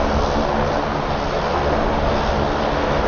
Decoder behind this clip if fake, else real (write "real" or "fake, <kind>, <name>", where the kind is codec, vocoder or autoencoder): real